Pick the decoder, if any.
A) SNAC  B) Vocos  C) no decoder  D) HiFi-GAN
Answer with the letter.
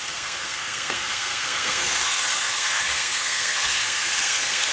A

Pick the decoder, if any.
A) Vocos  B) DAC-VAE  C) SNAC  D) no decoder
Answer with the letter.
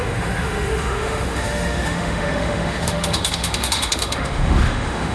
B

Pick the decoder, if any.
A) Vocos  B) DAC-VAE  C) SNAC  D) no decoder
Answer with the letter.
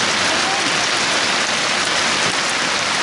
D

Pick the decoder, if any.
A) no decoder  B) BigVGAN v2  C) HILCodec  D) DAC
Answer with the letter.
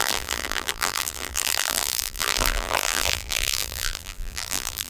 B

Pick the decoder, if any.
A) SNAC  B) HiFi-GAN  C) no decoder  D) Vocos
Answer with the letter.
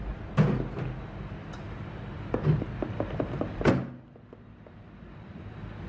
C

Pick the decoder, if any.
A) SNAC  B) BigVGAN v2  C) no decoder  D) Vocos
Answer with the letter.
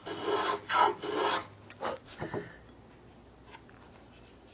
C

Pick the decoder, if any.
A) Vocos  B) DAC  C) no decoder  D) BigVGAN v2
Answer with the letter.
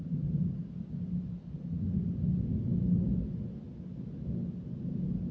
C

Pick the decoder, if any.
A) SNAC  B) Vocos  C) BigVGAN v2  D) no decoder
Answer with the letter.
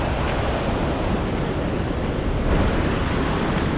D